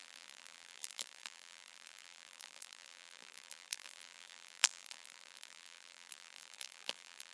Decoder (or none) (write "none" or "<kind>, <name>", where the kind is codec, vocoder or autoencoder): vocoder, BigVGAN v2